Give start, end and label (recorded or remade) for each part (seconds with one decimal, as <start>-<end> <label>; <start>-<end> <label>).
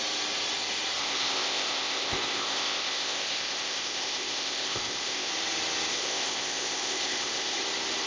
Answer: 0.0-1.0 recorded; 1.0-5.3 remade; 5.3-5.9 recorded; 5.9-7.6 remade; 7.6-8.1 recorded